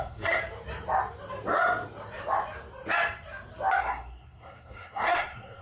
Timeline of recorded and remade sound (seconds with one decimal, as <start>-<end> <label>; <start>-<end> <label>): 0.0-0.4 remade; 0.4-3.8 recorded; 3.8-5.6 remade